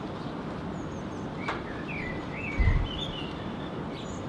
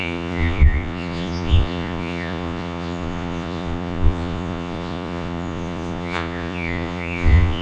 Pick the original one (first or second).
first